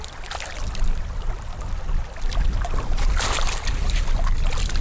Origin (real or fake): real